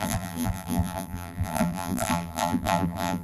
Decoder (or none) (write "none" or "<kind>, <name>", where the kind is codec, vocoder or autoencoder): vocoder, BigVGAN v2